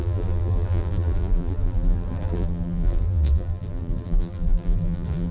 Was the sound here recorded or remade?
remade